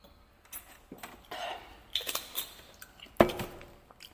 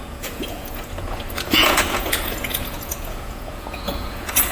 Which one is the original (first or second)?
first